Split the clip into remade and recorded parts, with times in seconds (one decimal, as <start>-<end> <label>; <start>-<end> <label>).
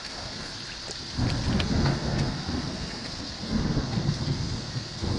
0.0-0.5 remade; 0.5-1.6 recorded; 1.6-5.2 remade